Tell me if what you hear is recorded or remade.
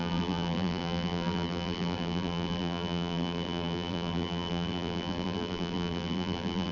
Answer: remade